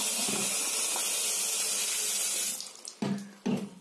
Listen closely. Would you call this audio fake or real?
real